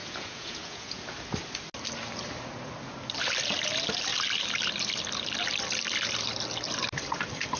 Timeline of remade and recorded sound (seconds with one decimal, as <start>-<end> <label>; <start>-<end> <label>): 0.0-1.0 remade; 1.0-7.6 recorded